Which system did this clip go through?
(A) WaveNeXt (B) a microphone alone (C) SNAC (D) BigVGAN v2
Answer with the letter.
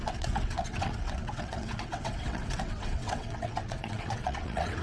A